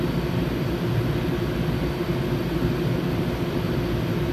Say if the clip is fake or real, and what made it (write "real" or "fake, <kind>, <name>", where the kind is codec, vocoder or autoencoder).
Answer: real